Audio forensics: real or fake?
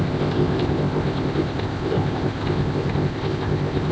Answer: fake